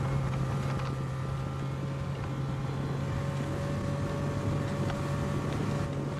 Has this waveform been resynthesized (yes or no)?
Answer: no